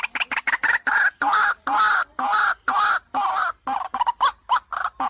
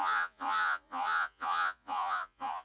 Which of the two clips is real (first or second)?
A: first